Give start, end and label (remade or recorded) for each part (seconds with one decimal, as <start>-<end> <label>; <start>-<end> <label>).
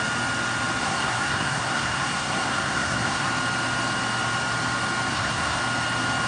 0.0-0.8 recorded; 0.8-3.3 remade; 3.3-5.1 recorded; 5.1-5.6 remade; 5.6-6.3 recorded